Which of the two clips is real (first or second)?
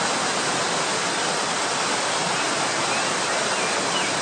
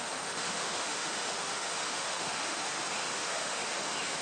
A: first